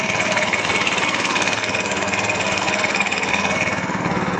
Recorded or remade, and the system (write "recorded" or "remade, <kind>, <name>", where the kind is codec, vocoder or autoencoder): remade, codec, SNAC